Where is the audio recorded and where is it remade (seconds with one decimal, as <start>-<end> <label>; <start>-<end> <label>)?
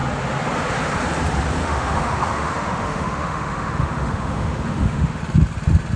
0.0-1.6 recorded; 1.6-5.2 remade; 5.2-6.0 recorded